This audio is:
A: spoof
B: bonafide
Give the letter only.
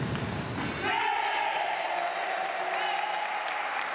B